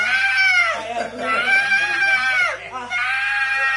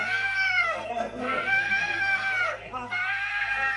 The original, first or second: first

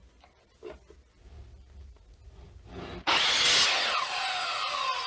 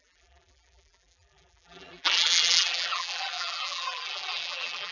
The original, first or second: first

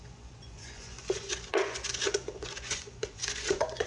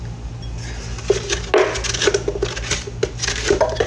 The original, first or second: second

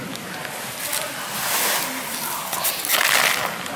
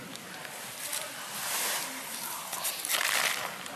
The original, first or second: first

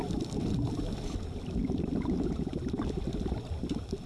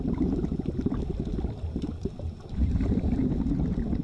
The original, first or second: second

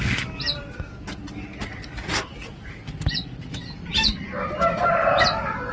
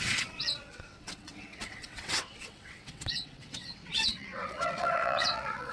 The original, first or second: first